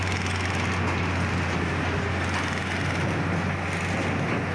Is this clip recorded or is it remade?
recorded